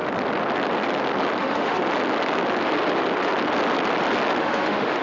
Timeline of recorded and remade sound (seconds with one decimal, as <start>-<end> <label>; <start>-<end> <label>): 0.0-1.4 recorded; 1.4-1.8 remade; 1.8-4.4 recorded; 4.4-5.0 remade